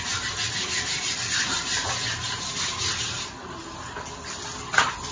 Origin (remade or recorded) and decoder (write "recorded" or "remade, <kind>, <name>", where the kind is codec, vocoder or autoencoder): recorded